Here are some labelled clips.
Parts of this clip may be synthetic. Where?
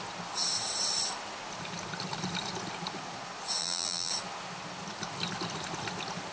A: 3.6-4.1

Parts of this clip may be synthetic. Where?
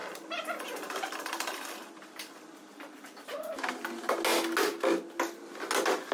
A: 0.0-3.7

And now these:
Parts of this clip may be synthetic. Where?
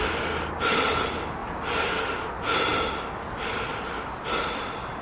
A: 1.4-1.9; 2.7-5.0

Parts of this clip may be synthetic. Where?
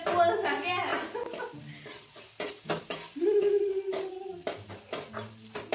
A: none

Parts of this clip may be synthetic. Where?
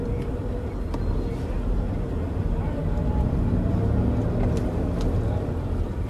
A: 0.0-0.8; 2.8-3.7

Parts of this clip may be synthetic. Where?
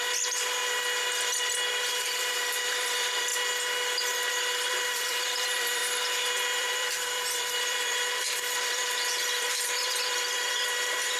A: 0.0-0.6; 1.9-3.3; 4.3-5.8; 6.6-11.2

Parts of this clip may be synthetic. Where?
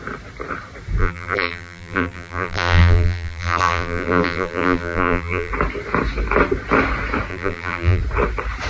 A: 1.0-5.5; 7.3-8.0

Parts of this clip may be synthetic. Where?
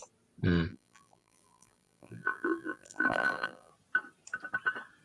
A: 0.7-3.7